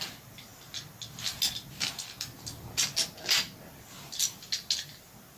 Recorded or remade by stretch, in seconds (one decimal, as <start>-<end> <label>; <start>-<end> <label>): 0.0-5.4 recorded